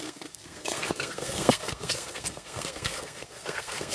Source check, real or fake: fake